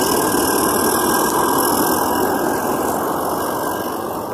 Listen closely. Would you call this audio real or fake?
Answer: real